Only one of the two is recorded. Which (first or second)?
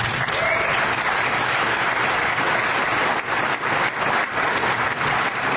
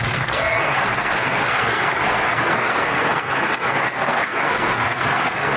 first